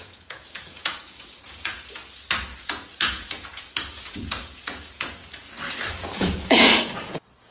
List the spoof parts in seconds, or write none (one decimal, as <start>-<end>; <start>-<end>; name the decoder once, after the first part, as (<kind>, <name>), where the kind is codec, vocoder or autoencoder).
0.0-2.0 (vocoder, Vocos); 2.6-5.2; 5.9-7.5